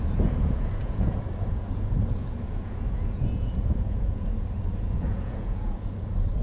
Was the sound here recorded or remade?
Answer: remade